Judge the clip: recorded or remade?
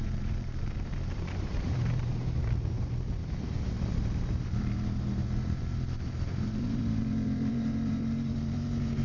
remade